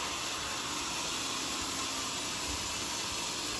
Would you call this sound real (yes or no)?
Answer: yes